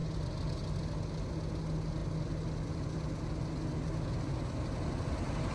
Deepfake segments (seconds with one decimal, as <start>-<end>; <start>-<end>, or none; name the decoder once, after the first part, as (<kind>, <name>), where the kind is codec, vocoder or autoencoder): none